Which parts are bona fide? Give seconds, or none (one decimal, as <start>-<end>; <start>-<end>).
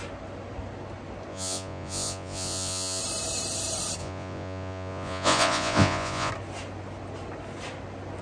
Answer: 0.0-1.3; 3.0-4.0; 6.3-8.2